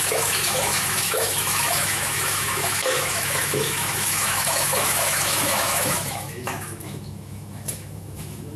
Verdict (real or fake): fake